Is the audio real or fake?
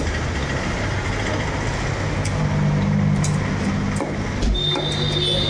real